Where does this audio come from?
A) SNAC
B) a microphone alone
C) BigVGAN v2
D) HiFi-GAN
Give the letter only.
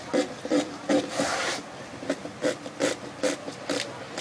B